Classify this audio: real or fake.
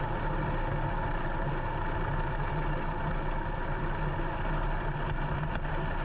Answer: real